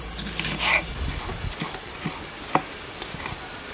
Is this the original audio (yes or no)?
yes